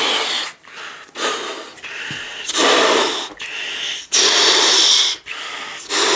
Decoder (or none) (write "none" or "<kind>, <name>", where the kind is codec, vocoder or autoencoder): none